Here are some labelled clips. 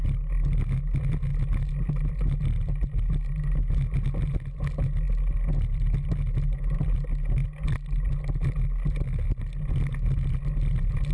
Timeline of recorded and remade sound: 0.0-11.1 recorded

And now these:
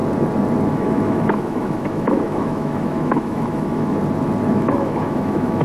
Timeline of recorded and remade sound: 0.0-0.7 recorded; 0.7-4.0 remade; 4.0-4.5 recorded; 4.5-5.6 remade

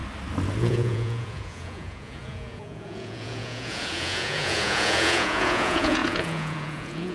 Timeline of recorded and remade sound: 0.0-0.6 recorded; 0.6-7.1 remade